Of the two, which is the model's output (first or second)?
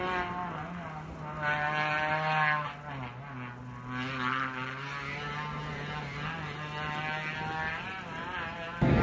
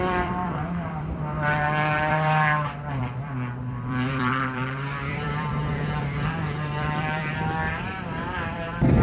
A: second